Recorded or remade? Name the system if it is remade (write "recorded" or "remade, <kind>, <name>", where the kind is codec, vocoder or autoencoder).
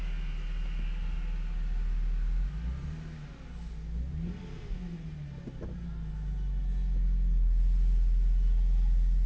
recorded